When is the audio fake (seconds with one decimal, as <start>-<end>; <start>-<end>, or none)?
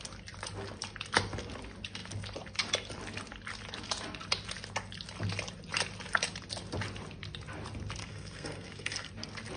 8.0-9.1